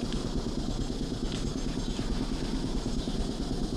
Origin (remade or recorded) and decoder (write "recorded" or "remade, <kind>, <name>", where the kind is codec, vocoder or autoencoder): recorded